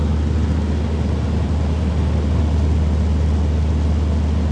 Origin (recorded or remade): recorded